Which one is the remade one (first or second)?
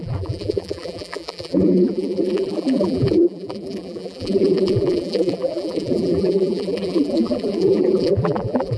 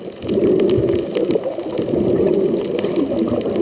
first